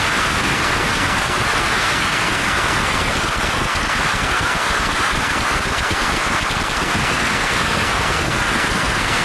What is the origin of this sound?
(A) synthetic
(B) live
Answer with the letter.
A